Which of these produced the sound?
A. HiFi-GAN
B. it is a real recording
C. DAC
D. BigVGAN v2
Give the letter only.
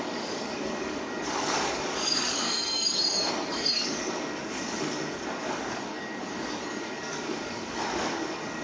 C